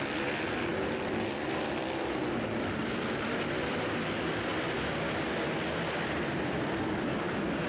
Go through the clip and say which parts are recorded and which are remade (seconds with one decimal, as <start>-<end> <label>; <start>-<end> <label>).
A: 0.0-7.7 recorded